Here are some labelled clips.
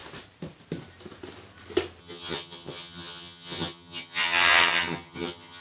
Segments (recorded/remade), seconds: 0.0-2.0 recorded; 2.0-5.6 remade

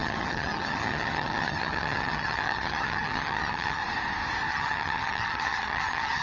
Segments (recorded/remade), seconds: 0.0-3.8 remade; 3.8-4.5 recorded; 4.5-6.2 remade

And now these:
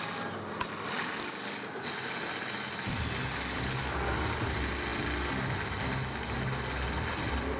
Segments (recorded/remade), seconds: 0.0-7.6 recorded